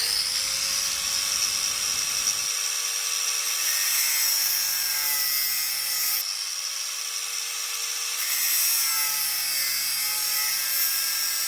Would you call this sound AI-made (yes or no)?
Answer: no